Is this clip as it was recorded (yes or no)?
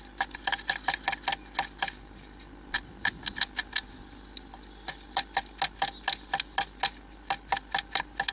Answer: yes